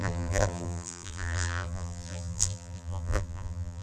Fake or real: fake